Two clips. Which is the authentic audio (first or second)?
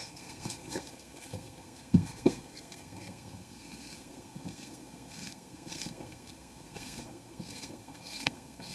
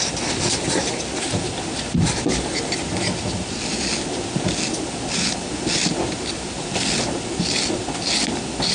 second